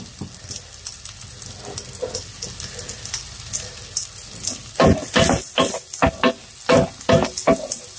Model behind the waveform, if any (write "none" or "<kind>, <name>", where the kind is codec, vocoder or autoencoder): none